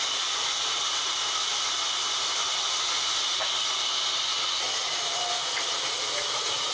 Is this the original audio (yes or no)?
yes